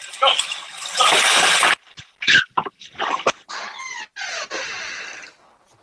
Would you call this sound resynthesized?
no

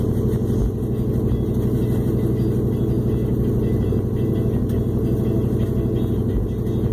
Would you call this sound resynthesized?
no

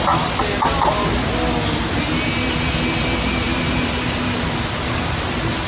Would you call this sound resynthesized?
no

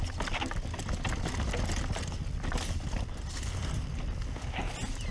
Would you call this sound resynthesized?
no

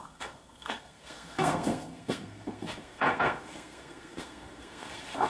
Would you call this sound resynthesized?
yes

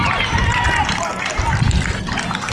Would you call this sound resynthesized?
no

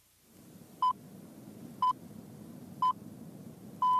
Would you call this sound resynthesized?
no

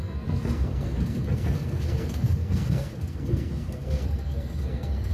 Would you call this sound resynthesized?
yes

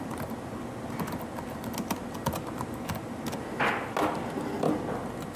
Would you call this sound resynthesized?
no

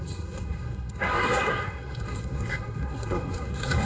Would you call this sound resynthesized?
yes